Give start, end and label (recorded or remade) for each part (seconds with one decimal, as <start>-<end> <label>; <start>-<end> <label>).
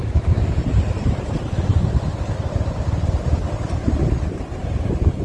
0.0-5.2 recorded